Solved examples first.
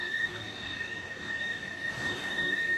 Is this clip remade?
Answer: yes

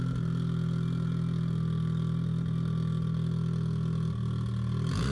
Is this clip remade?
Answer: no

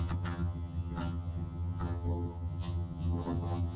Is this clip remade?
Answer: yes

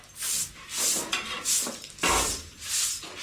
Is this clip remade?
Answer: no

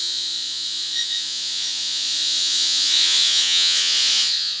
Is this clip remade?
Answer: yes